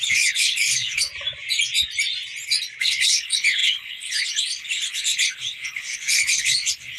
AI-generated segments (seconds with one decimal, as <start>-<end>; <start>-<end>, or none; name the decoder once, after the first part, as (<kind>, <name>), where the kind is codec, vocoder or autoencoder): 0.0-1.1 (codec, HILCodec); 2.8-7.0